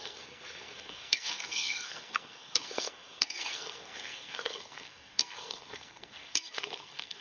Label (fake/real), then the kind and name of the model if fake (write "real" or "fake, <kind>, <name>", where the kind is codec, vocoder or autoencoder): fake, codec, SNAC